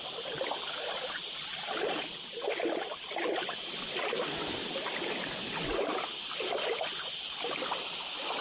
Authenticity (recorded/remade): recorded